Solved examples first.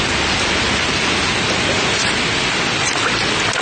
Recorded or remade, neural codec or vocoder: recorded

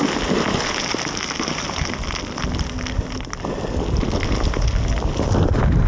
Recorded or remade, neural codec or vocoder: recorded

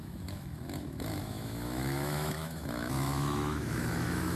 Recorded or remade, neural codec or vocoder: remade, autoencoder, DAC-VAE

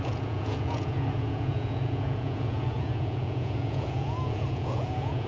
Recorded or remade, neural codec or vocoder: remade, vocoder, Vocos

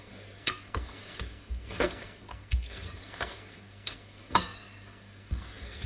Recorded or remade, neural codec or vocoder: remade, codec, SNAC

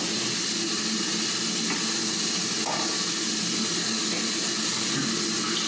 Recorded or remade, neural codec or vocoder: recorded